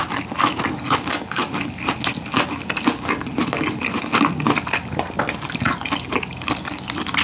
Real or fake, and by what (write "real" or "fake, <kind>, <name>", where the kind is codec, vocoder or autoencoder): real